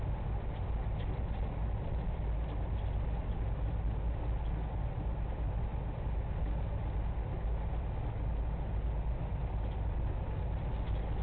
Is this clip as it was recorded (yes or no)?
yes